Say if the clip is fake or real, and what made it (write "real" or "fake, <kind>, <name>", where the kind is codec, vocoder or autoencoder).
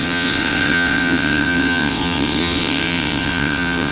fake, vocoder, WaveNeXt